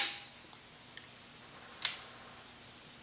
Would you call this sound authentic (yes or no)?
yes